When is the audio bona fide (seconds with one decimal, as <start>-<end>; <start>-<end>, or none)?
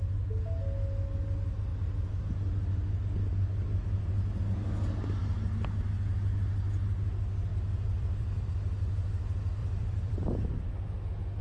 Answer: 0.0-7.5; 8.5-9.6; 10.5-11.4